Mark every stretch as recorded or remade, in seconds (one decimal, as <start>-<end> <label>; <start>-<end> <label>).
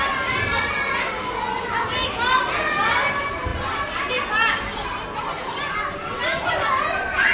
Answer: 0.0-7.3 recorded